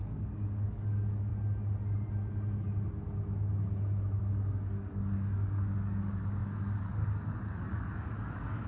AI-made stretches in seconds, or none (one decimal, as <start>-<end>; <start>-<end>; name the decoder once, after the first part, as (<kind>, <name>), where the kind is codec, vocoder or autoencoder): 0.0-1.3 (codec, DAC); 4.2-8.7